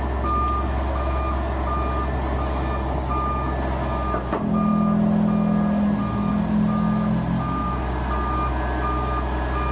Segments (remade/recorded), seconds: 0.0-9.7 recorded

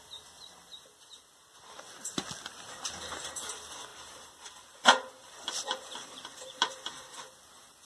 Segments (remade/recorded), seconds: 0.0-3.9 recorded; 3.9-4.6 remade; 4.6-5.2 recorded; 5.2-7.2 remade; 7.2-7.9 recorded